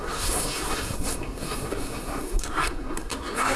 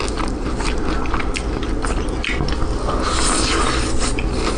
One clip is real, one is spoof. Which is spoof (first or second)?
first